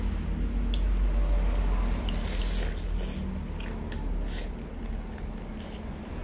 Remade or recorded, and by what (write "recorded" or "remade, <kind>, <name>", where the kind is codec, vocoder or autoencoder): recorded